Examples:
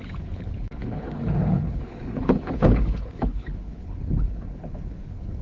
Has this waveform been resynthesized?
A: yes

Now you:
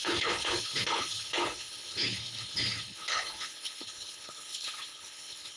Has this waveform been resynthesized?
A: yes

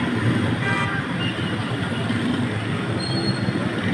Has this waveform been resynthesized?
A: no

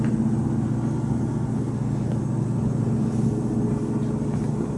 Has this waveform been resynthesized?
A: no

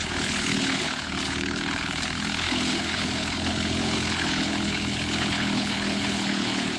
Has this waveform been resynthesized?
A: yes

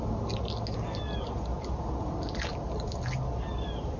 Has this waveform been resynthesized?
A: no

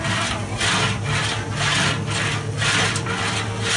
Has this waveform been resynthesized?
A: no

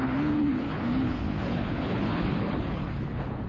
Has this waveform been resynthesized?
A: yes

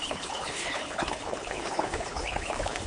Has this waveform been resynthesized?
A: yes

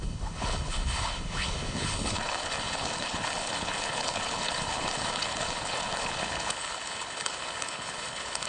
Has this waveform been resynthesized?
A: yes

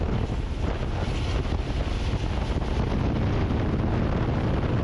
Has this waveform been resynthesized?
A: no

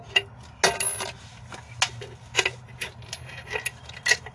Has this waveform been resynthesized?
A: no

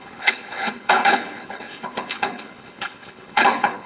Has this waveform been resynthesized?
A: yes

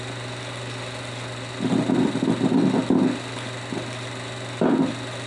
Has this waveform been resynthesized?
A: no